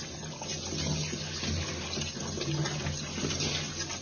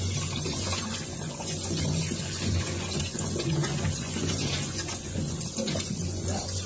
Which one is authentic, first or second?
first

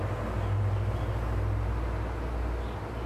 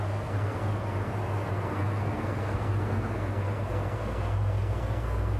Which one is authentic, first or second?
first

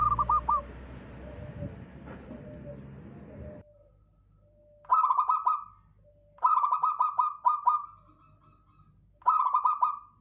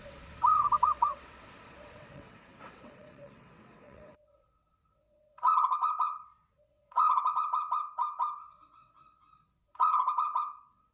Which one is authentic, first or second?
first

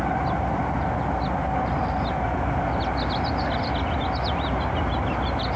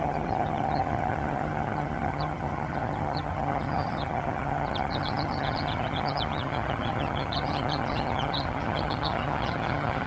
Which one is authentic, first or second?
first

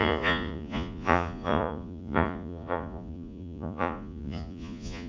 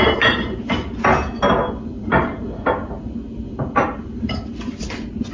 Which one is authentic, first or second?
second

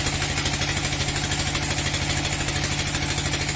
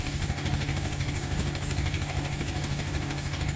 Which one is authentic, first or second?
first